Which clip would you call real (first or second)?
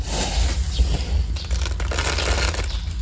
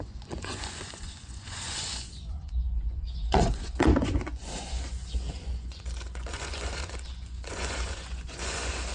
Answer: first